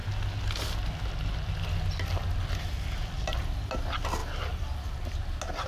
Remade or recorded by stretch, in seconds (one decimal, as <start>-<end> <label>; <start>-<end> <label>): 0.0-5.7 recorded